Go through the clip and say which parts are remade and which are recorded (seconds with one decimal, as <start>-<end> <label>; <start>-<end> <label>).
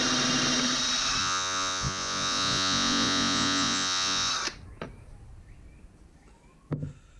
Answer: 0.0-1.2 recorded; 1.2-4.3 remade; 4.3-7.2 recorded